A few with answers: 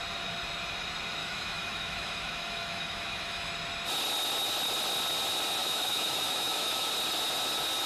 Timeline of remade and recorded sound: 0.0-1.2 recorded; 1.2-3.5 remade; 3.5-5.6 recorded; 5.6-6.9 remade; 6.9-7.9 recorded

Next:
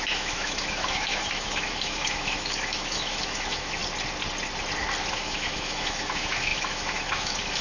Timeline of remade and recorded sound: 0.0-3.8 remade; 3.8-5.1 recorded; 5.1-7.6 remade

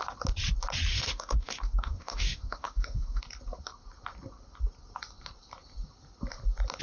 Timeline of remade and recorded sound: 0.0-0.9 recorded; 0.9-3.2 remade; 3.2-6.8 recorded

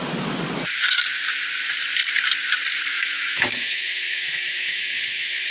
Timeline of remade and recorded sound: 0.0-2.9 recorded; 2.9-5.5 remade